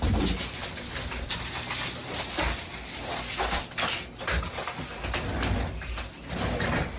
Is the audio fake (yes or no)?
no